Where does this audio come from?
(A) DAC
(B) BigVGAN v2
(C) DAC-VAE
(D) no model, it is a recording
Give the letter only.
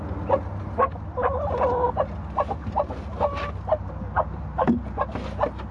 D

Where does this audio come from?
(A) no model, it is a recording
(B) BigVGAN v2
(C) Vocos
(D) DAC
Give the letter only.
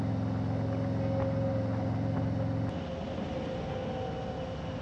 A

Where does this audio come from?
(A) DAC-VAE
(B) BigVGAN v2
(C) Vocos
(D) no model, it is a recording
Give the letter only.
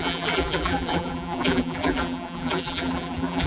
B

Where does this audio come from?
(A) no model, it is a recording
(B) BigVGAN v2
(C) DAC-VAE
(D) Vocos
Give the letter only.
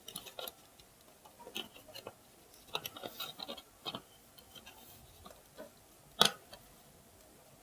A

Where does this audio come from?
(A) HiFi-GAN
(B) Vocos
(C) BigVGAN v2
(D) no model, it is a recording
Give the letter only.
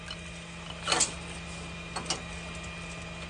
D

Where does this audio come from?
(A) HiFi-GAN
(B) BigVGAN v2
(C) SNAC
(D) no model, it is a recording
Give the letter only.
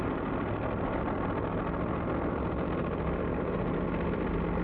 B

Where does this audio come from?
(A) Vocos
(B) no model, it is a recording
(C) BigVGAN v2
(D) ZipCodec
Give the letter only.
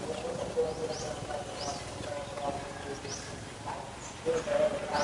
B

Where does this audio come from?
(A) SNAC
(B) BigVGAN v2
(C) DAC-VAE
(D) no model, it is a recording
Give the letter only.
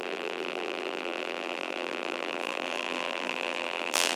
B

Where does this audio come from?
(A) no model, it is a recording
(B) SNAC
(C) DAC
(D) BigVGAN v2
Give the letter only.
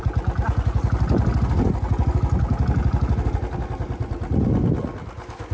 A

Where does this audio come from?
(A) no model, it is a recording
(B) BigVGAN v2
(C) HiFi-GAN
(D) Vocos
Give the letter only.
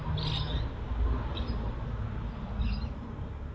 A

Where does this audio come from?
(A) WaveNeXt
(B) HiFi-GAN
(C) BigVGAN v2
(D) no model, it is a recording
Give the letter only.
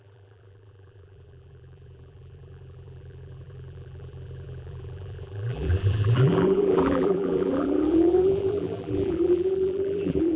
C